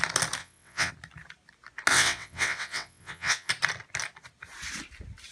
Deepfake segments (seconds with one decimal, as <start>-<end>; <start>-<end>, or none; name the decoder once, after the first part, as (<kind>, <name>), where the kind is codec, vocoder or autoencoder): 0.4-0.9 (vocoder, WaveNeXt); 1.9-3.5